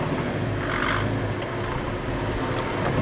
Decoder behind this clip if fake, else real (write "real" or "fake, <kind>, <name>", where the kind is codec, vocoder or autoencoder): real